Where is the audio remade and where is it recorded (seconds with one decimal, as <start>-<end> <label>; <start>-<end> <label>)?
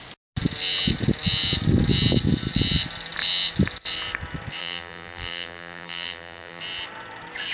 0.0-4.6 recorded; 4.6-6.6 remade; 6.6-7.5 recorded